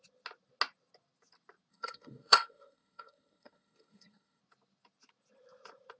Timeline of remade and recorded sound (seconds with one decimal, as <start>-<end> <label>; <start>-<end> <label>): 0.0-1.7 recorded; 1.7-4.4 remade; 4.4-6.0 recorded